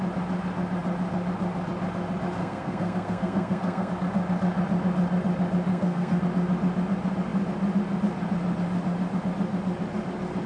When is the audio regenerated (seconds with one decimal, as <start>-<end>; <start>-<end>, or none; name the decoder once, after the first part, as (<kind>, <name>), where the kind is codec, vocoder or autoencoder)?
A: 2.4-3.9 (codec, SNAC); 5.7-6.2